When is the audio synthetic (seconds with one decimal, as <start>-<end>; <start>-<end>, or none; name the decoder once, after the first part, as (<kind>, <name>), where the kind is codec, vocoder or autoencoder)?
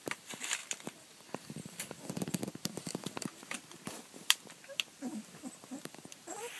0.0-6.6 (vocoder, BigVGAN v2)